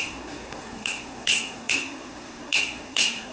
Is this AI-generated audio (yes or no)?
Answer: yes